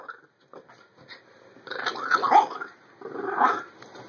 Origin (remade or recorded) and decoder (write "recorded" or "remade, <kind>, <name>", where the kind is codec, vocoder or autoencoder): recorded